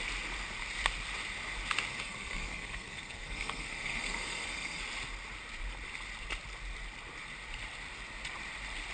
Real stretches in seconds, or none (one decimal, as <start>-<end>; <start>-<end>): 0.0-1.9; 4.8-8.9